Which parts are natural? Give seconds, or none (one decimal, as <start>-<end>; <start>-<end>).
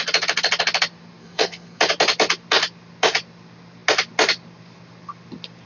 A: 0.0-1.2; 1.8-5.7